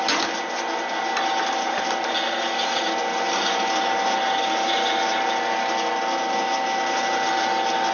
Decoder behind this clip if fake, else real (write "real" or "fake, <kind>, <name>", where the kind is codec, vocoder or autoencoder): real